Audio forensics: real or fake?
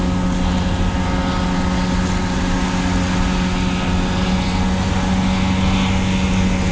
real